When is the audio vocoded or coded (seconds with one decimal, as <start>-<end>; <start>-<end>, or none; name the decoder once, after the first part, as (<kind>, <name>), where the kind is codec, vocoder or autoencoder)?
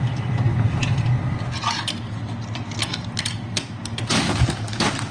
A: none